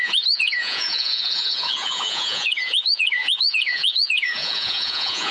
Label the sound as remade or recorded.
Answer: remade